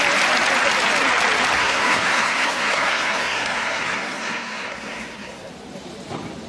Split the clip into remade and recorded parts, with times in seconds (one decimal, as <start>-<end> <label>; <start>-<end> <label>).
0.0-1.6 recorded; 1.6-5.5 remade; 5.5-6.5 recorded